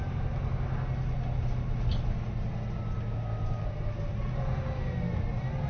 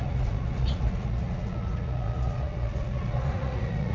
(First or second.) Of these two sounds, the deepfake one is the second